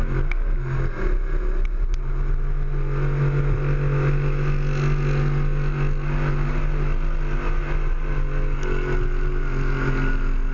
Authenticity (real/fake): real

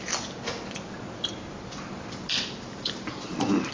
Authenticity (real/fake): real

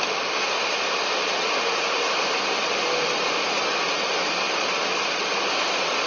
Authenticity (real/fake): real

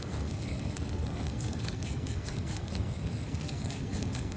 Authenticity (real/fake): fake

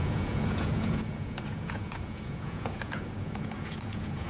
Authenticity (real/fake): fake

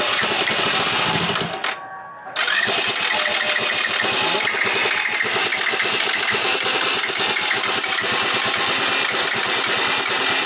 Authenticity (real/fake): real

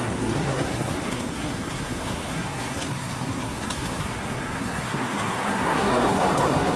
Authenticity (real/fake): fake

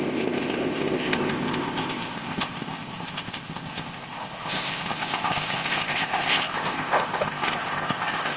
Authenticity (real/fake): fake